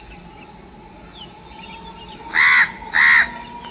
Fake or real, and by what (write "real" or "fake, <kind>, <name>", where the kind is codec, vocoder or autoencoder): real